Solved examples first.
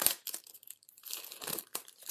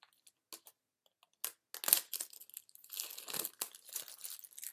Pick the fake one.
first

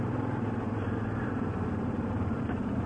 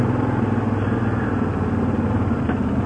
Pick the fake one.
first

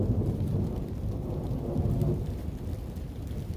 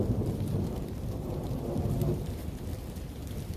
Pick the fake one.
second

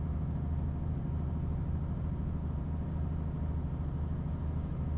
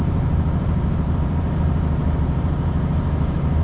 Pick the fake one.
second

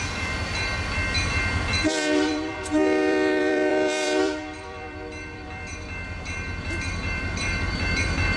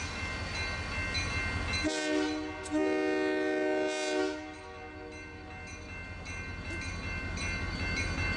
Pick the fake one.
first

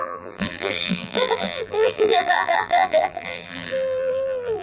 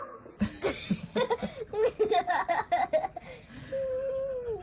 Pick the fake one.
first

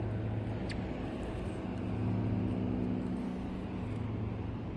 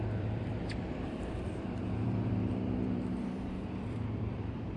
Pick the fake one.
second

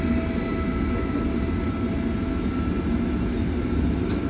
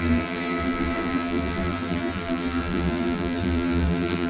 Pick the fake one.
second